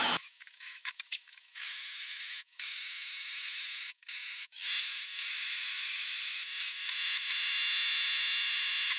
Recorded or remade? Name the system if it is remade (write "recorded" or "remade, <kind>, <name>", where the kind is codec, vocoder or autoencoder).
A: remade, autoencoder, DAC-VAE